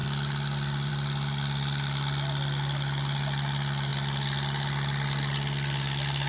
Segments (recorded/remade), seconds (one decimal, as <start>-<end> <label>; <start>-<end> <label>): 0.0-6.3 recorded